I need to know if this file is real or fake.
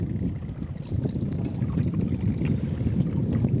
real